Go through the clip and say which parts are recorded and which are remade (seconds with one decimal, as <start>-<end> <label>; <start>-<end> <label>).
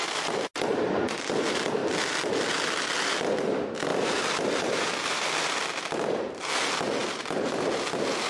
0.0-1.8 recorded; 1.8-3.3 remade; 3.3-3.9 recorded; 3.9-6.3 remade; 6.3-7.0 recorded; 7.0-7.7 remade; 7.7-8.3 recorded